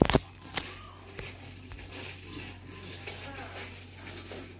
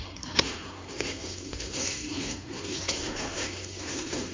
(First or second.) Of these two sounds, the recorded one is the first